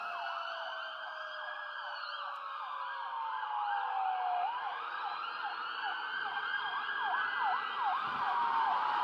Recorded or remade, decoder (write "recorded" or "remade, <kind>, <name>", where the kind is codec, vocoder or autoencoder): recorded